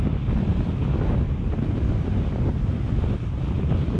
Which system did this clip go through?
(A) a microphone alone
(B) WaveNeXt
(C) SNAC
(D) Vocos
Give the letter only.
A